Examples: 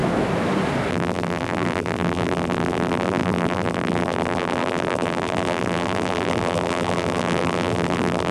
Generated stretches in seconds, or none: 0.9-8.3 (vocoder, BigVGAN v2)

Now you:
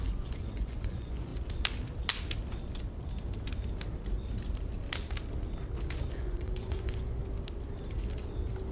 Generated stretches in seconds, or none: 0.0-1.3 (vocoder, Vocos); 6.1-7.2